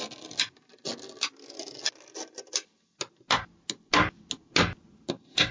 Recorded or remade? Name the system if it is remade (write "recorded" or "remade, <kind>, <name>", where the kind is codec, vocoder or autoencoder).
recorded